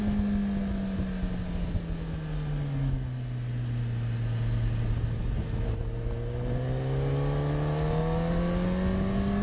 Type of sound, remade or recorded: recorded